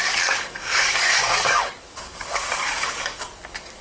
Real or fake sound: fake